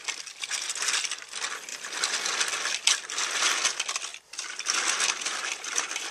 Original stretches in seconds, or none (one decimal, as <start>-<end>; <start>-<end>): 0.0-6.1